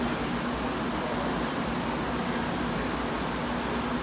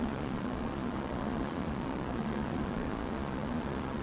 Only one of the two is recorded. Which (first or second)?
first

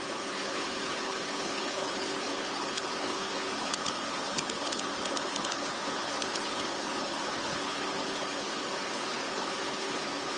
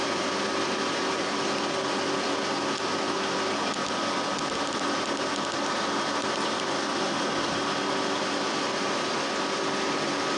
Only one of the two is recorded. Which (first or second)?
second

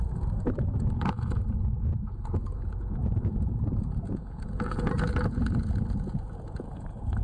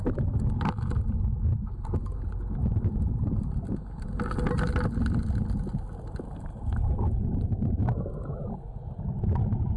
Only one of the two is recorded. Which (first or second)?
second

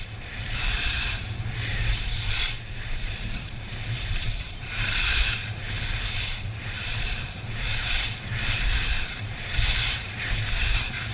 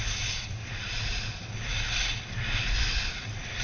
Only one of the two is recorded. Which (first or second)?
second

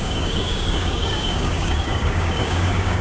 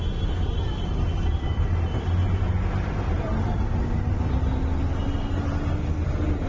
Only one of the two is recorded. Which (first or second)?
second